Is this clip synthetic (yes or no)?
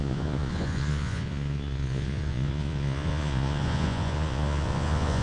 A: yes